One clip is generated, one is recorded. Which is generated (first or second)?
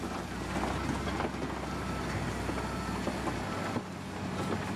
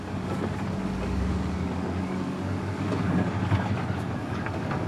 second